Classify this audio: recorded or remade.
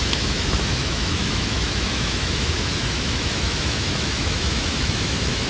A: remade